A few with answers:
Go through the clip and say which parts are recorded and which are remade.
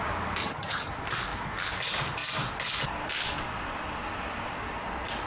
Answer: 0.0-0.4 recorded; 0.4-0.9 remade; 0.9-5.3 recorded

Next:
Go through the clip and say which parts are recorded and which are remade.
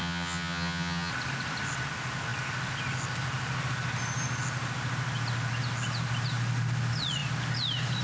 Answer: 0.0-1.1 remade; 1.1-8.0 recorded